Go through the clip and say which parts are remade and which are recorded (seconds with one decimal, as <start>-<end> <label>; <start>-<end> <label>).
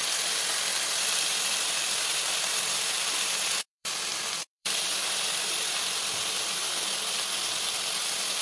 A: 0.0-8.4 remade